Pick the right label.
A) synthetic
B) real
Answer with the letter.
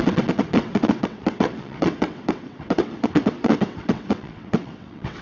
A